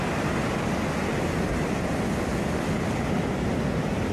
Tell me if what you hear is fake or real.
real